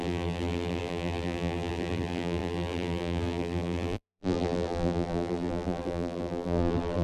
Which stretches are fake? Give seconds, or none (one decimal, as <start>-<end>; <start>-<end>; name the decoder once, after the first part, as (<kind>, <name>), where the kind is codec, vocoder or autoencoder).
0.0-7.0 (vocoder, BigVGAN v2)